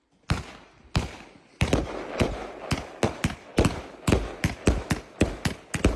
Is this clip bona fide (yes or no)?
yes